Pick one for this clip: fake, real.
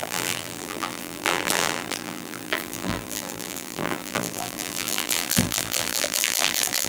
fake